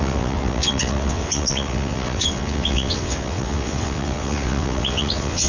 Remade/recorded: remade